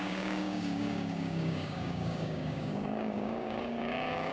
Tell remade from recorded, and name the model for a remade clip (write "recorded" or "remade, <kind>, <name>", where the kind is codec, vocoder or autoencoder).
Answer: remade, codec, DAC